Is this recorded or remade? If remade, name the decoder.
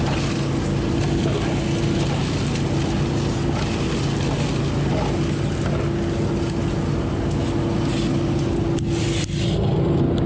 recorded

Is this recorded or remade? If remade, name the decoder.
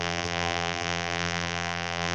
remade, vocoder, BigVGAN v2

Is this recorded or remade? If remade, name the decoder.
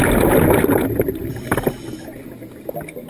recorded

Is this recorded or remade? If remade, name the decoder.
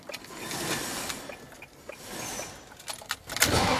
recorded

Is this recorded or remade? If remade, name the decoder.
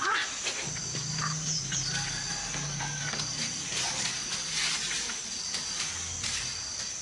recorded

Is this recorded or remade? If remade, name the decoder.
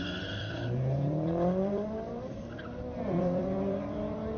remade, vocoder, BigVGAN v2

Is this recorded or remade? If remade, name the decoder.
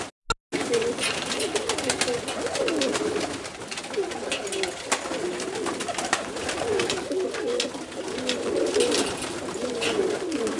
recorded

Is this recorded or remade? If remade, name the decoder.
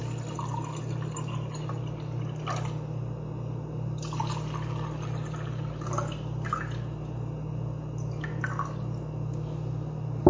recorded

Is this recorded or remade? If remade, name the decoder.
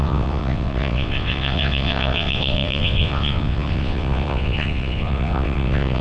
remade, vocoder, WaveNeXt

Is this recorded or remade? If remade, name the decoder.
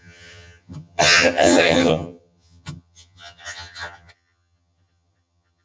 remade, vocoder, HiFi-GAN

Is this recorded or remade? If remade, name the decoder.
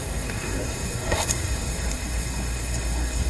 remade, codec, SNAC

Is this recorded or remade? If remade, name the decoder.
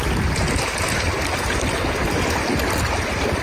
recorded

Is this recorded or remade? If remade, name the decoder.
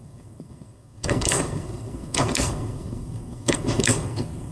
remade, codec, SNAC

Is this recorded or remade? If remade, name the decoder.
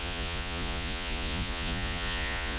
remade, vocoder, Vocos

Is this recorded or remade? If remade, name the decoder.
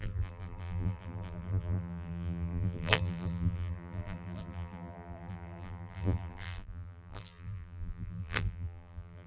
remade, vocoder, BigVGAN v2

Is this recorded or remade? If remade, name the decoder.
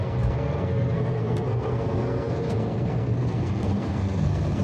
remade, codec, SNAC